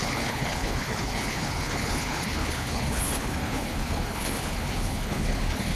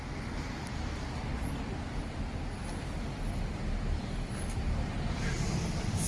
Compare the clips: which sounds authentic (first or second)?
second